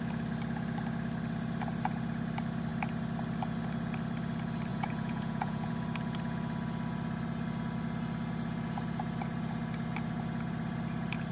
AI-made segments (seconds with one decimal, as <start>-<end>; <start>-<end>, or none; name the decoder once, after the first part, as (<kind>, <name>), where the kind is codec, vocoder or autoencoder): 4.7-5.7 (vocoder, Vocos)